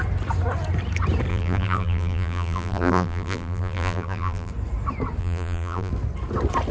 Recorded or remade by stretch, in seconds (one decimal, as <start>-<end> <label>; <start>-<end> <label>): 0.0-1.3 recorded; 1.3-4.5 remade; 4.5-5.2 recorded; 5.2-5.9 remade; 5.9-6.7 recorded